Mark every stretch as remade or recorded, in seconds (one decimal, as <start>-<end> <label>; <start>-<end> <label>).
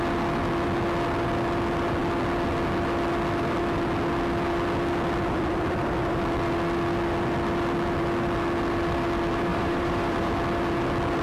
0.0-9.5 recorded; 9.5-10.3 remade; 10.3-11.2 recorded